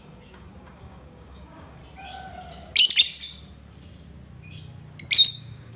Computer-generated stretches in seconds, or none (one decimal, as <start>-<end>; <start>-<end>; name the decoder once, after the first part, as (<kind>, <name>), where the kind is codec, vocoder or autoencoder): 0.0-1.8 (codec, DAC); 5.3-5.8